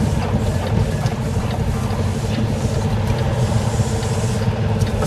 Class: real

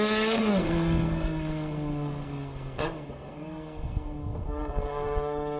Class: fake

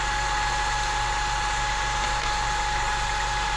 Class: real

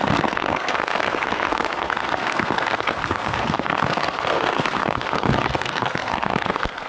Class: fake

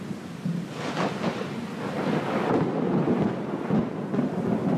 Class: real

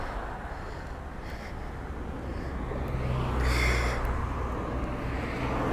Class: real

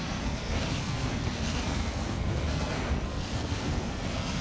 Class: fake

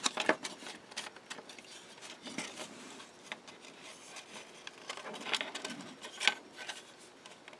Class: real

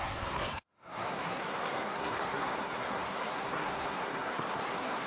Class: fake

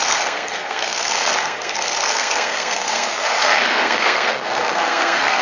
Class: fake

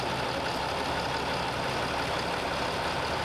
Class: real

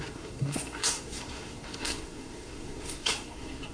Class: fake